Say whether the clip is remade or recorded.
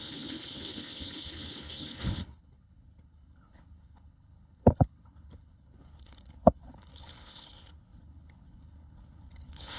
remade